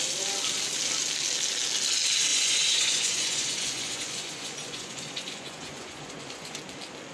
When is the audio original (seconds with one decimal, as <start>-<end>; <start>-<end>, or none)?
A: 0.0-2.3; 6.6-7.1